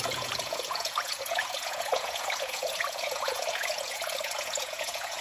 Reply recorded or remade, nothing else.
remade